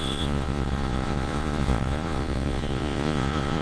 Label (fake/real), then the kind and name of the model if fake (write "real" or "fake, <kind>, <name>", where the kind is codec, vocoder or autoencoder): fake, vocoder, Vocos